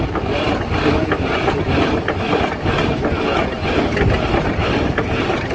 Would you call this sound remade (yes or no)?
no